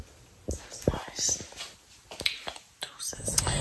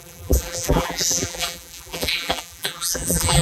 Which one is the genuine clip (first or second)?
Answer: first